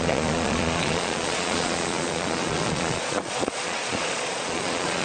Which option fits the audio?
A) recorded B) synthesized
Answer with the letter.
B